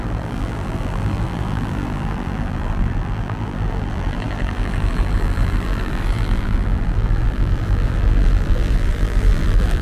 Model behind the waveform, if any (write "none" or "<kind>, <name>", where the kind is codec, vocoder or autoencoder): vocoder, BigVGAN v2